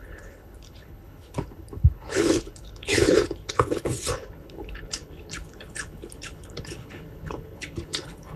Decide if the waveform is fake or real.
fake